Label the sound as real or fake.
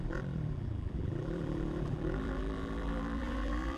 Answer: fake